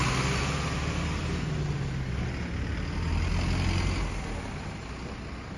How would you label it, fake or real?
real